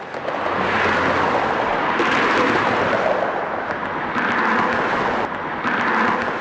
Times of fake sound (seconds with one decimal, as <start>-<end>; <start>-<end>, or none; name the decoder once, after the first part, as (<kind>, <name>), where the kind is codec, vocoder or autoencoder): none